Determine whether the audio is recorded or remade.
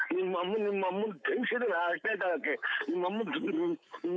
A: remade